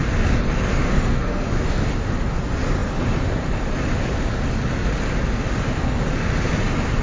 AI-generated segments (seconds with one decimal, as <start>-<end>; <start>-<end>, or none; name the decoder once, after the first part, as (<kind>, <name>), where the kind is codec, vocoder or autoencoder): 0.7-2.4 (autoencoder, DAC-VAE)